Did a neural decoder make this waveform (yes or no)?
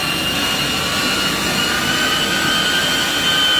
no